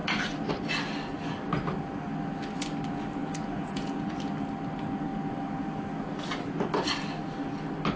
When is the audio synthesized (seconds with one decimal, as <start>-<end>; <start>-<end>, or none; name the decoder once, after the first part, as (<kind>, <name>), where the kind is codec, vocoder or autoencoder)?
3.2-4.2 (vocoder, Vocos)